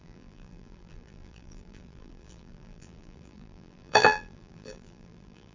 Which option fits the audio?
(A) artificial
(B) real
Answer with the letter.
A